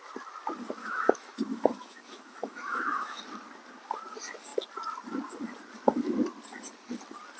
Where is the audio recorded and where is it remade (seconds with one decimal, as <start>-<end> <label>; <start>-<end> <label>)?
0.0-0.8 recorded; 0.8-3.2 remade; 3.2-7.4 recorded